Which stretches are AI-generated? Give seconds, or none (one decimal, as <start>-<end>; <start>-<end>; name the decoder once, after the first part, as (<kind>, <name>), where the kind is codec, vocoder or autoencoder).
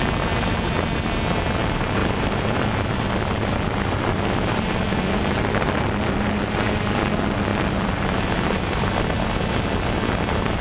2.0-2.6 (vocoder, BigVGAN v2); 7.5-8.9